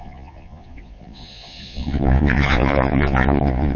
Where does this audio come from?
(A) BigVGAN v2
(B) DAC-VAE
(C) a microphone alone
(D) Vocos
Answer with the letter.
D